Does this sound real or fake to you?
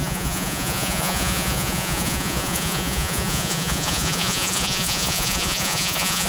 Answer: fake